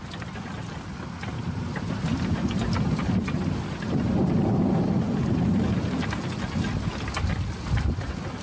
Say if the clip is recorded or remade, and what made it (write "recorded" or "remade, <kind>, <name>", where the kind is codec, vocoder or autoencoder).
recorded